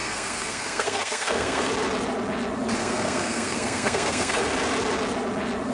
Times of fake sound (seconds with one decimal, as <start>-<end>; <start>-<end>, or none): 0.0-1.7; 2.8-4.4